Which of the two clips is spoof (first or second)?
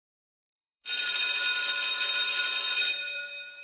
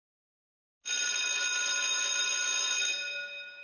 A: first